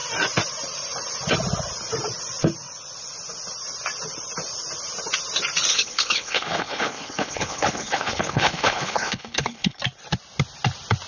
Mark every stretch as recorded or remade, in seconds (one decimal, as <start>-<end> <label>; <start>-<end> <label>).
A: 0.0-5.7 recorded; 5.7-9.8 remade; 9.8-11.1 recorded